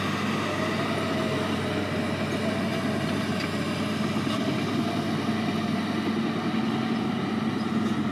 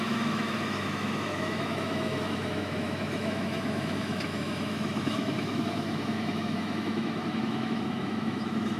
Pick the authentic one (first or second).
first